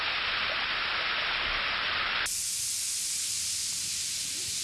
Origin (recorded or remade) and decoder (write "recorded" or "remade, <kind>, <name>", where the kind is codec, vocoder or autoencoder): recorded